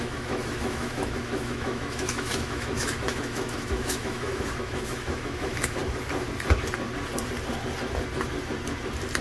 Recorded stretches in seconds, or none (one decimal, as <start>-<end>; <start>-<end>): 5.8-9.2